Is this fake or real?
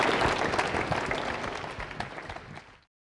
real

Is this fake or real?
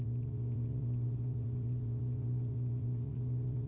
fake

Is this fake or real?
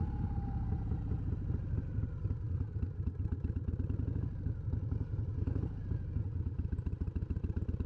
real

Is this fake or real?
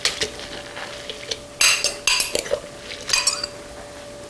real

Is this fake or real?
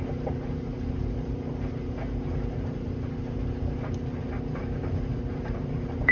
fake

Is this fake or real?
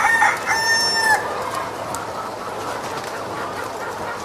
real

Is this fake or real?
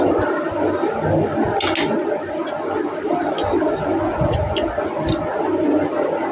real